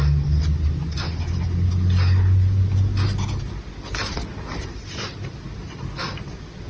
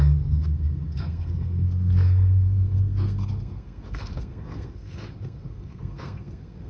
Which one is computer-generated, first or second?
second